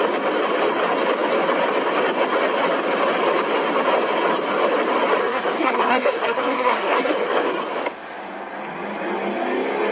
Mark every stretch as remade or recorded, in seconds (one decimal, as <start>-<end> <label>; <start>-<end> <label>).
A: 0.0-5.2 recorded; 5.2-7.6 remade; 7.6-9.9 recorded